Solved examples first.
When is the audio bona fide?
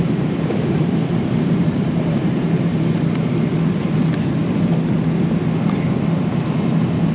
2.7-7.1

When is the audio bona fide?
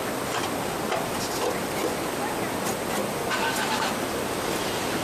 0.0-0.4; 1.3-5.0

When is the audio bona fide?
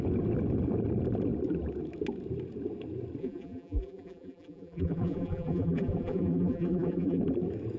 0.0-3.2; 7.2-7.8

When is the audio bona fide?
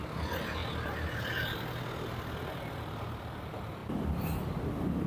0.6-1.2; 3.8-4.6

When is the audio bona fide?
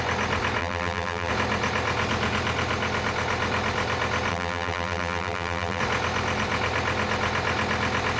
0.0-0.6; 1.3-4.3; 5.8-8.2